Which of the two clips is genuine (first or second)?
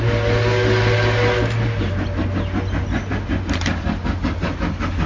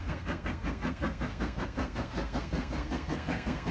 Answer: first